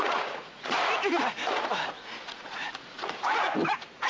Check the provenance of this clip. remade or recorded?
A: remade